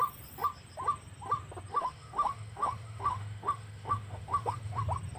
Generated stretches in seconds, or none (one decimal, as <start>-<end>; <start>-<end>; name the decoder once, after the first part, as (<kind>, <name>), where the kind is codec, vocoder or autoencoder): 1.7-4.8 (autoencoder, DAC-VAE)